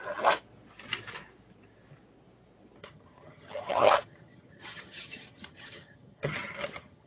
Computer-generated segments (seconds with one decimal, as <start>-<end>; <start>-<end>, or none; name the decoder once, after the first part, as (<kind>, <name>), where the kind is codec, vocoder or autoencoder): 2.8-7.1 (vocoder, HiFi-GAN)